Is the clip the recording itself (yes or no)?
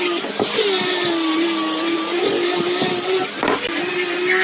yes